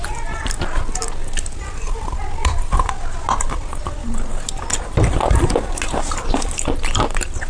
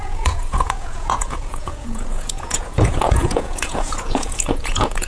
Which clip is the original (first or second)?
first